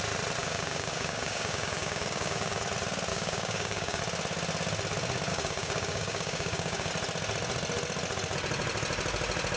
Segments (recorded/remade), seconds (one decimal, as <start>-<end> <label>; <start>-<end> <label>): 0.0-0.4 recorded; 0.4-2.6 remade; 2.6-3.1 recorded; 3.1-4.0 remade; 4.0-5.3 recorded; 5.3-6.9 remade; 6.9-9.6 recorded